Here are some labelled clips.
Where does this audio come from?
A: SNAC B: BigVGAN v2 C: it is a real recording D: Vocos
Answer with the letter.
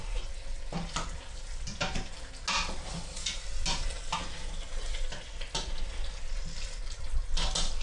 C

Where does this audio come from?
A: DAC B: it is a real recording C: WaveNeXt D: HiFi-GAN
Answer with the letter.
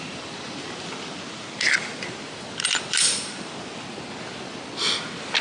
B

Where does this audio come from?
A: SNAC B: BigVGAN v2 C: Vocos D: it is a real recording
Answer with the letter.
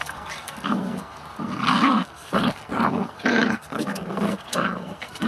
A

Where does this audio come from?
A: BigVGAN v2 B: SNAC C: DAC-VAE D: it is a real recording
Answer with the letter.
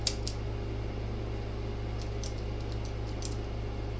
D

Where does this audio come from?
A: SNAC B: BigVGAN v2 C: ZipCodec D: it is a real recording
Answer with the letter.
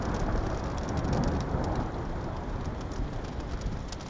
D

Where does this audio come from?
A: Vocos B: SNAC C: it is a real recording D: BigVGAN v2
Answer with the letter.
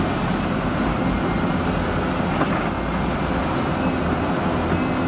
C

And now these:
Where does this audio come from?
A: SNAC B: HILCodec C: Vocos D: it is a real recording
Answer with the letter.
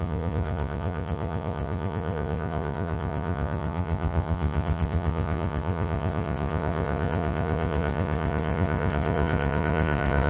C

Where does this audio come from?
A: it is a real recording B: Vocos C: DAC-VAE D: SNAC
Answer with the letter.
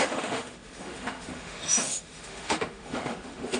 C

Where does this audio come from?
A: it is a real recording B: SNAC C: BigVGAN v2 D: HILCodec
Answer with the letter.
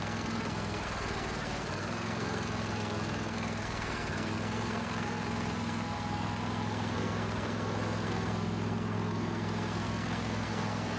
B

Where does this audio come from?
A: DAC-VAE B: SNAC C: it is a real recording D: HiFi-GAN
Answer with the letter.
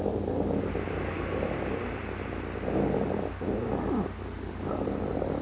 C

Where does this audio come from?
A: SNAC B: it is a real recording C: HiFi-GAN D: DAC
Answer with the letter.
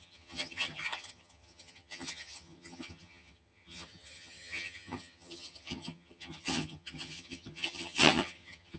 C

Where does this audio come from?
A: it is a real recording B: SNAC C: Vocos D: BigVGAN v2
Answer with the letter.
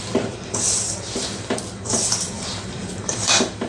D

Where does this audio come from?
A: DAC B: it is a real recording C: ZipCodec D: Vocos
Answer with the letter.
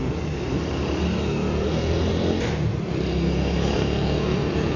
B